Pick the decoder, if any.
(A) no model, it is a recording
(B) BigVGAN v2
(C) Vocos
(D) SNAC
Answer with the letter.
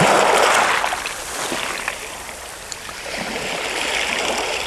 B